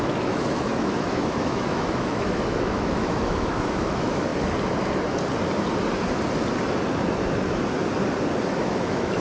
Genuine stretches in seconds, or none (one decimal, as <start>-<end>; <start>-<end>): 4.3-8.6